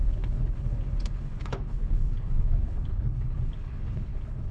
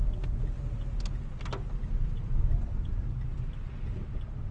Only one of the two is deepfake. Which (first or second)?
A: first